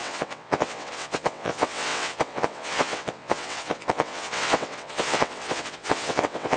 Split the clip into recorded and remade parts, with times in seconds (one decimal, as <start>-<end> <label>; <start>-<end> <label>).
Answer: 0.0-6.6 remade